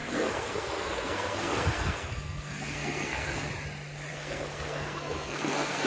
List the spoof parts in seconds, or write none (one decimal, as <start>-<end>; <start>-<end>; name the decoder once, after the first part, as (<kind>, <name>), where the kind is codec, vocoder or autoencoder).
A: 0.0-3.5 (codec, SNAC); 4.1-5.9